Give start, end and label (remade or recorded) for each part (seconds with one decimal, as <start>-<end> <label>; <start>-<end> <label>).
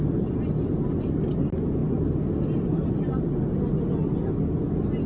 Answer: 0.0-5.1 recorded